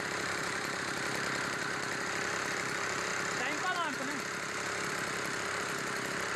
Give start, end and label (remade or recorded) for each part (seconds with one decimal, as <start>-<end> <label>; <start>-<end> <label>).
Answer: 0.0-3.1 remade; 3.1-4.9 recorded; 4.9-6.4 remade